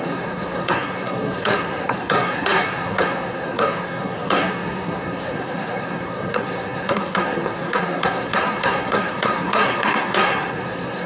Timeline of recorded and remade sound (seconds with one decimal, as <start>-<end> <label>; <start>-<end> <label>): 0.0-11.1 remade